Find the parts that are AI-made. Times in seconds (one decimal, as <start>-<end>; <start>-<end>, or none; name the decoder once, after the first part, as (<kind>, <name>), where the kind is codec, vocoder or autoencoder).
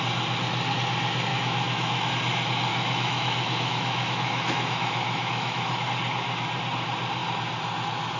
1.3-2.1 (autoencoder, DAC-VAE); 2.7-5.9